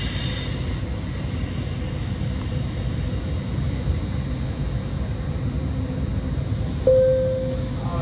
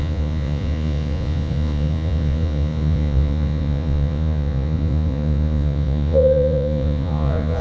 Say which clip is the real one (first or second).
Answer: first